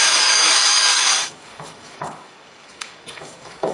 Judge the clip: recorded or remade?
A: remade